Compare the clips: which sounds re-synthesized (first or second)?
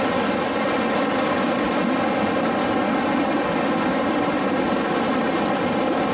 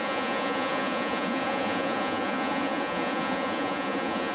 second